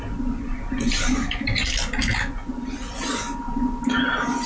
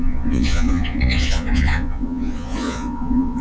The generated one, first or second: second